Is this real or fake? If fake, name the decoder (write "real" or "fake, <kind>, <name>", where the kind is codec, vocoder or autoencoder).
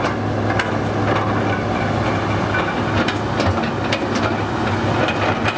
real